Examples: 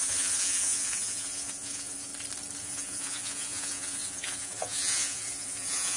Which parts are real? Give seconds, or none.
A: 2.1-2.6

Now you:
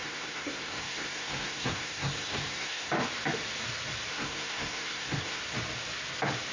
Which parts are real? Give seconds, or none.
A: 2.9-4.1; 5.4-6.5

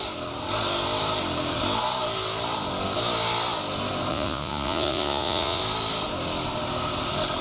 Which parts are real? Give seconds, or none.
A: 0.0-4.1; 5.6-7.4

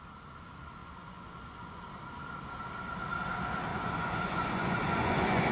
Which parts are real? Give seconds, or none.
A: 0.0-0.8; 1.8-3.7

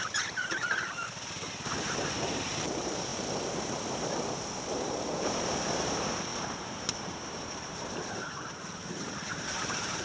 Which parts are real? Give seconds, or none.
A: 3.1-4.5

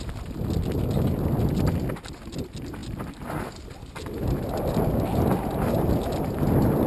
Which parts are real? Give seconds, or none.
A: 0.0-6.9